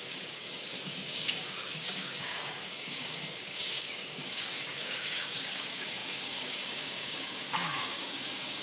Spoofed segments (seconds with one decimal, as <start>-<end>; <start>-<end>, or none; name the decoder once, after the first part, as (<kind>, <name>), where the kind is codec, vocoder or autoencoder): 0.0-8.6 (codec, DAC)